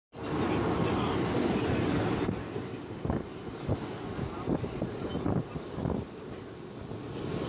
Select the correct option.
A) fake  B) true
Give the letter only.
B